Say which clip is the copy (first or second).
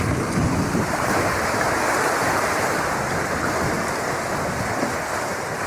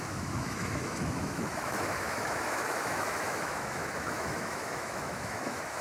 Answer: second